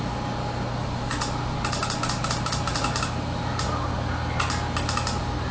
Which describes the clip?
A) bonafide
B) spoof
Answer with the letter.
A